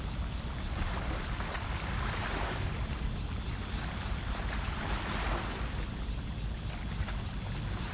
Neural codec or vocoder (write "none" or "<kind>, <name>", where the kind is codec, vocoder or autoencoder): none